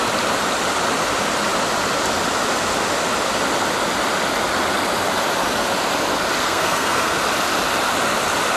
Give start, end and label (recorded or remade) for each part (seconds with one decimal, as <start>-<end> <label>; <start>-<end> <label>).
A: 0.0-6.4 recorded; 6.4-7.2 remade; 7.2-8.6 recorded